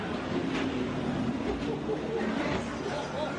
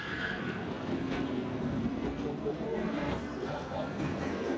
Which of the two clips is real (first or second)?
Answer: first